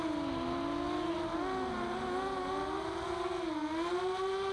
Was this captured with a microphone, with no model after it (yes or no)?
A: yes